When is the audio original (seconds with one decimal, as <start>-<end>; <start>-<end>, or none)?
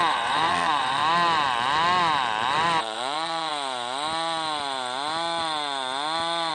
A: 1.0-2.8; 3.5-6.5